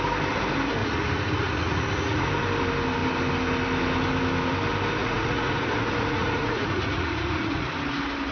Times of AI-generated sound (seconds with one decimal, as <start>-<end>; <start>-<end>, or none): 0.8-2.3; 5.0-7.6